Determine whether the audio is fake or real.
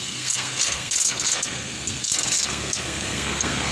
fake